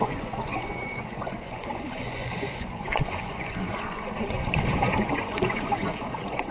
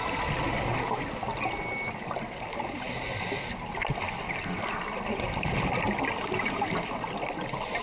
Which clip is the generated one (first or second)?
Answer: first